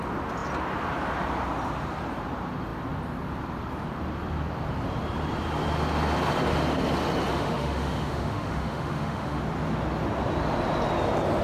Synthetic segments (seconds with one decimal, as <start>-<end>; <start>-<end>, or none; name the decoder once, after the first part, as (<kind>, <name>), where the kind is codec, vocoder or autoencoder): 7.3-9.4 (autoencoder, DAC-VAE)